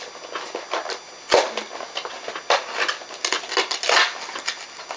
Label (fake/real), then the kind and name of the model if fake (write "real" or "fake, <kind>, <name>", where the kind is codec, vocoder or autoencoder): real